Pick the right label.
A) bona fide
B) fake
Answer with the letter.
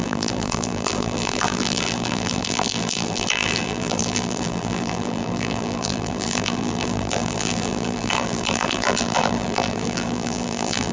B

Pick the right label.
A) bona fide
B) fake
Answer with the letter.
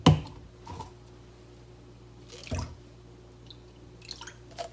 A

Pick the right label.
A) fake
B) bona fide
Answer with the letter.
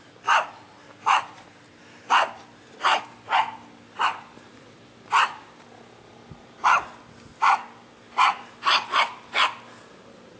B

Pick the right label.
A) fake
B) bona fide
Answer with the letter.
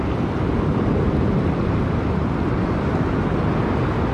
B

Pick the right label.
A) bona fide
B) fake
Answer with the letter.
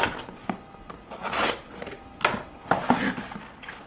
A